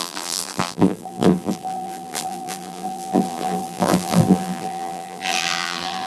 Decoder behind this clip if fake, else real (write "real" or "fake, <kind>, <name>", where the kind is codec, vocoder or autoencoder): fake, vocoder, BigVGAN v2